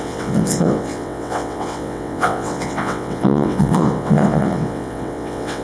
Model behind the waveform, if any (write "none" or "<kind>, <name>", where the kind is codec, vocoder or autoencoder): vocoder, WaveNeXt